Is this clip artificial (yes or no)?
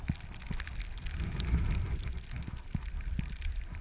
no